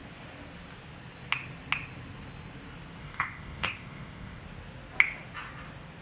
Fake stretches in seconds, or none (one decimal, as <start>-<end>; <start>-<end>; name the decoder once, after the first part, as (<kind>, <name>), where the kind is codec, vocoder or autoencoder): 3.0-4.4 (codec, ZipCodec)